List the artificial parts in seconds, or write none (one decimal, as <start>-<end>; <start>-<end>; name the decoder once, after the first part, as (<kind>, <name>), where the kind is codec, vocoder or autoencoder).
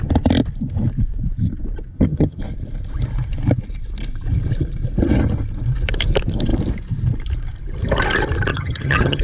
1.9-2.4 (vocoder, HiFi-GAN); 8.5-9.2